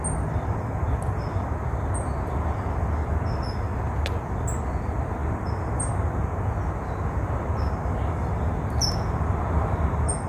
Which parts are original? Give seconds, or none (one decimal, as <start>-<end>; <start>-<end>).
0.0-10.3

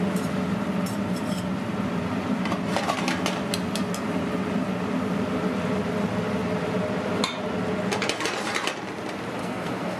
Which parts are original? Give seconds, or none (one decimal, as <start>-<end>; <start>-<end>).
0.0-9.4

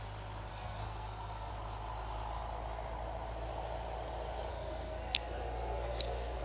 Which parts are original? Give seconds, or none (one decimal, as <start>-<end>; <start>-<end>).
0.0-0.5; 1.5-4.5